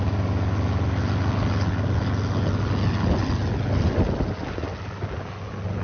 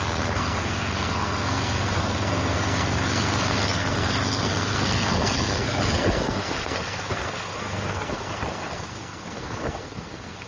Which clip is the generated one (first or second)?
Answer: second